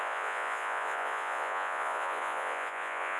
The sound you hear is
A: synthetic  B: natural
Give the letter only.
A